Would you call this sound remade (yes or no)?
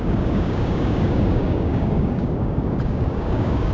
yes